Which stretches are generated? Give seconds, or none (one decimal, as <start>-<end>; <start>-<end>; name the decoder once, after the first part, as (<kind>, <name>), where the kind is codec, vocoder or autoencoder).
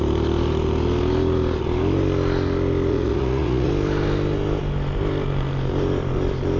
2.9-3.7 (vocoder, Vocos)